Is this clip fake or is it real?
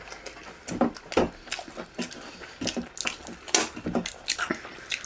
real